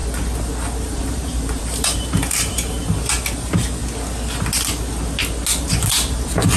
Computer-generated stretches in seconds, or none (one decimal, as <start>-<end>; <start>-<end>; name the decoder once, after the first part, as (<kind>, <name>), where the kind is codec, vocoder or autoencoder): 0.8-3.8 (vocoder, BigVGAN v2); 5.6-6.6